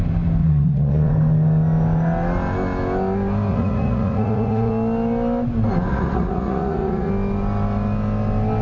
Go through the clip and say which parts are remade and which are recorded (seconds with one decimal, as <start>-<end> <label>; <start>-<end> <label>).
0.0-0.4 recorded; 0.4-1.1 remade; 1.1-3.5 recorded; 3.5-4.7 remade; 4.7-5.9 recorded; 5.9-7.1 remade; 7.1-8.6 recorded